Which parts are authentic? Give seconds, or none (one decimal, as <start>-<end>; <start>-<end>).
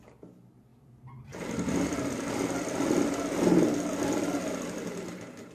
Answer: 0.0-5.5